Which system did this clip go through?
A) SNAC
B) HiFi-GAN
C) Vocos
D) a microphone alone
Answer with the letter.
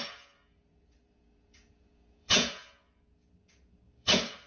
C